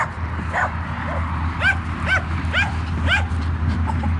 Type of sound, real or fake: real